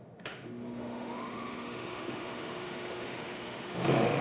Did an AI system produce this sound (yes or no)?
yes